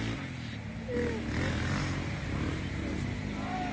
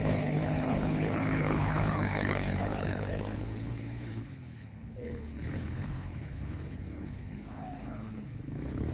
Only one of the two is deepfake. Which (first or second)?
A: second